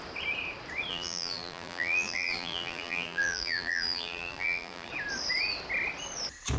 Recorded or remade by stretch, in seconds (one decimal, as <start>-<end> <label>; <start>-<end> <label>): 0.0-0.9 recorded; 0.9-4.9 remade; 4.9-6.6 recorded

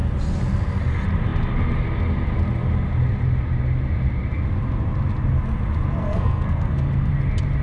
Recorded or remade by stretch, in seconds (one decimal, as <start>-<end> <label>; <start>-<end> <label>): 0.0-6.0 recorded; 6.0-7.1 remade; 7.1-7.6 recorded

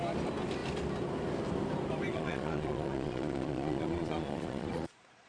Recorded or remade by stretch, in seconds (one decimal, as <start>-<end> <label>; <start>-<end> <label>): 0.0-2.1 recorded; 2.1-5.3 remade